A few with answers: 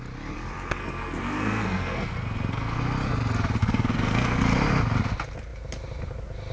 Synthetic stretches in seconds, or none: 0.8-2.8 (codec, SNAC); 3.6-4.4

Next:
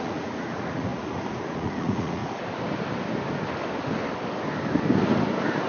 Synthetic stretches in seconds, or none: 0.0-2.2 (vocoder, Vocos)

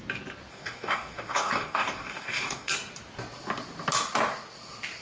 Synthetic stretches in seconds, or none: 0.5-2.7 (codec, DAC)

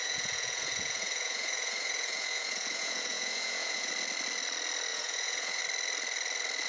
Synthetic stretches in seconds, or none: 0.0-3.9 (vocoder, Vocos); 4.9-5.6

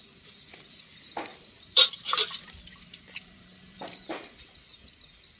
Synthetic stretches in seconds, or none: 1.3-4.1 (vocoder, BigVGAN v2)